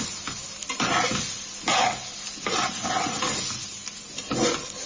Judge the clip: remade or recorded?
recorded